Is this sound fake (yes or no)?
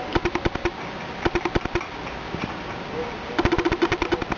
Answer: no